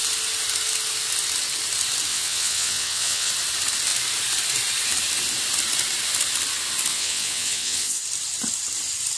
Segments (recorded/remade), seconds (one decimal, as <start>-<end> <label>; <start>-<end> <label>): 0.0-2.1 recorded; 2.1-3.3 remade; 3.3-6.9 recorded; 6.9-8.0 remade; 8.0-9.2 recorded